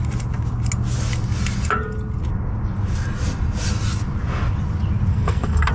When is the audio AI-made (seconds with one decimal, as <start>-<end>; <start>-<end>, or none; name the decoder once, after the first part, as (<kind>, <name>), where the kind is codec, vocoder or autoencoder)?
5.1-5.7 (codec, SNAC)